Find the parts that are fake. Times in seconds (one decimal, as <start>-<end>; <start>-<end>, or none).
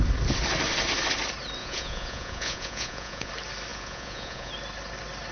1.6-3.3; 3.7-4.5